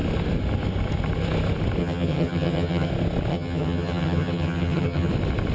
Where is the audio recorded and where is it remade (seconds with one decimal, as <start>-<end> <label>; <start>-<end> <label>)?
0.0-1.8 recorded; 1.8-2.9 remade; 2.9-3.3 recorded; 3.3-5.1 remade; 5.1-5.5 recorded